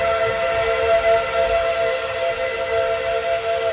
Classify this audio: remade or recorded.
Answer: recorded